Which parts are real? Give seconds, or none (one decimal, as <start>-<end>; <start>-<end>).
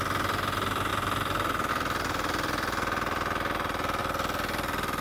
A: 0.0-5.0